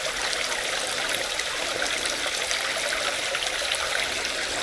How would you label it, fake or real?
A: real